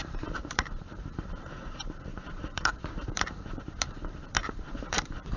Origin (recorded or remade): remade